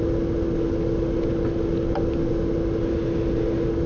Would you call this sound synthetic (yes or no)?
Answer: no